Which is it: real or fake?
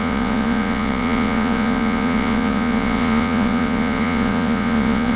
fake